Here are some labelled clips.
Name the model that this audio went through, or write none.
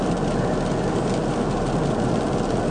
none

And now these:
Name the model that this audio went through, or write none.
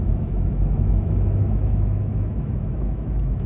autoencoder, DAC-VAE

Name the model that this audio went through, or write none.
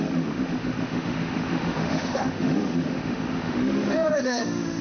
autoencoder, DAC-VAE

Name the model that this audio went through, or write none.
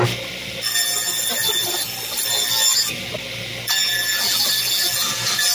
none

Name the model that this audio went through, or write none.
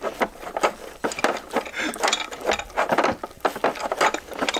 none